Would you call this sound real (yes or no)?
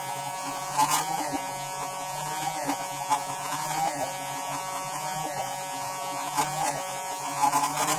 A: no